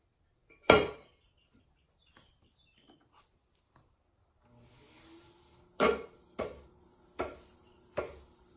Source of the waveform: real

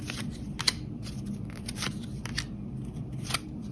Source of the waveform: real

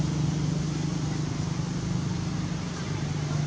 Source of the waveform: real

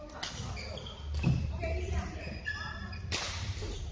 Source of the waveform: real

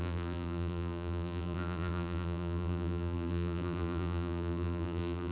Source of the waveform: fake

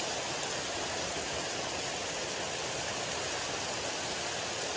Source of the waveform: real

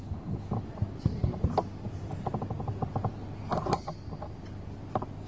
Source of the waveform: real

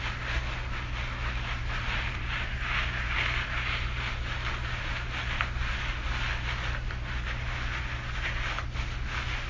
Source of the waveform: real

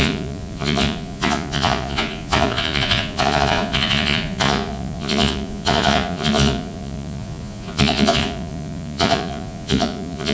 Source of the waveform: fake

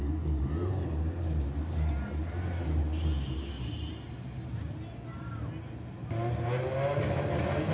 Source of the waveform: real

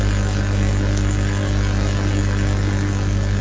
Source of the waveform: real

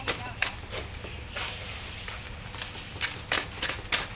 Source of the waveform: real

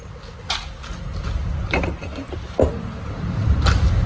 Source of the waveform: real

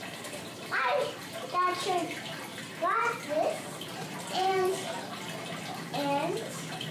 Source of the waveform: real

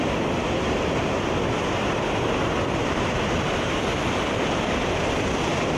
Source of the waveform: fake